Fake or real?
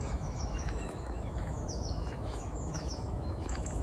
fake